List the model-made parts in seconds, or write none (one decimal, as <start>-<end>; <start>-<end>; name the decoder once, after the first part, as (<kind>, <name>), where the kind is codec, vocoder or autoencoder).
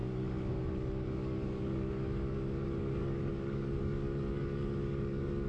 0.0-5.5 (codec, DAC)